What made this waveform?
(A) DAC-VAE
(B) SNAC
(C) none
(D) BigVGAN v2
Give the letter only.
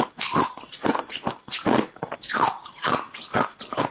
D